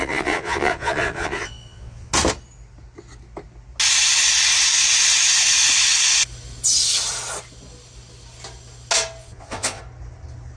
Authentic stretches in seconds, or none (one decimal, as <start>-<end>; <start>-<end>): 2.1-9.2; 9.8-10.6